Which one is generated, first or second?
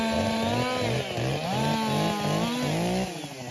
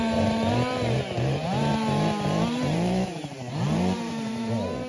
second